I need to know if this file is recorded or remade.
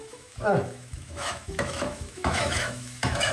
remade